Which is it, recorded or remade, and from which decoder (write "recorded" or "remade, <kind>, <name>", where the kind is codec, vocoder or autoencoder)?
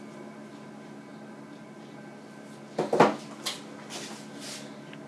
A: recorded